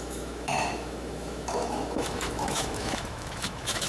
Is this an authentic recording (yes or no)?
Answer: no